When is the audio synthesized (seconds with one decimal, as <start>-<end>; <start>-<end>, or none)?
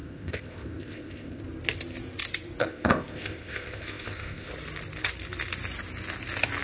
0.0-1.4; 2.6-4.5